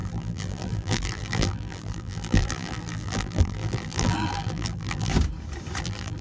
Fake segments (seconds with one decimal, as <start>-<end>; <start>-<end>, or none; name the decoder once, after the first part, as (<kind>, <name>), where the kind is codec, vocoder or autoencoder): 0.0-5.1 (vocoder, BigVGAN v2); 5.8-6.2